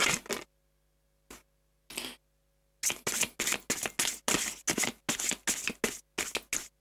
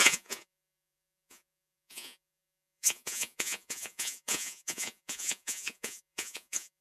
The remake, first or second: second